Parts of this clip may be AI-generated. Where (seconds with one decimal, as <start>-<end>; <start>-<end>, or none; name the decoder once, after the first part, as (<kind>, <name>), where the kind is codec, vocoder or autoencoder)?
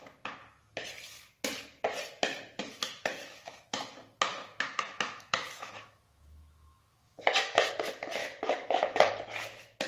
2.6-3.9 (autoencoder, DAC-VAE); 4.3-7.7; 8.2-9.1